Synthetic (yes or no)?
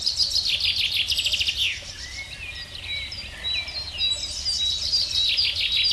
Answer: no